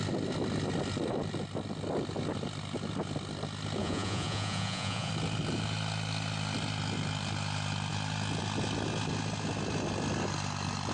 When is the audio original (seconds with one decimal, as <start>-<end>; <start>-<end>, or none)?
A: 0.0-3.8; 5.1-10.9